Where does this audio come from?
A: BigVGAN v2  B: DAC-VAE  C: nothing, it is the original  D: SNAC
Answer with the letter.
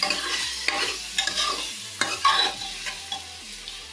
C